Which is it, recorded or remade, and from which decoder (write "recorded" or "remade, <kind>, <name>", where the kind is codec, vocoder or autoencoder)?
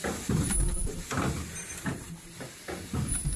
recorded